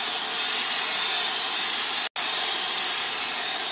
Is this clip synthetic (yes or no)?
no